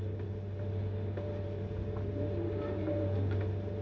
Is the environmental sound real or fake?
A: real